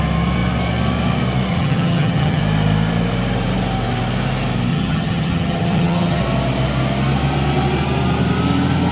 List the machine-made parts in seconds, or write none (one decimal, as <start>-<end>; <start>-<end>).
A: 1.5-2.4; 4.7-6.2